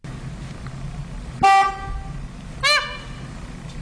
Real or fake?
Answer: real